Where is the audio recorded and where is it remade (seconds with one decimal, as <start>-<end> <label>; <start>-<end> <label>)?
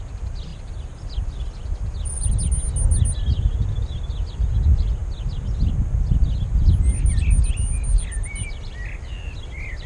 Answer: 0.0-0.5 recorded; 0.5-2.3 remade; 2.3-9.9 recorded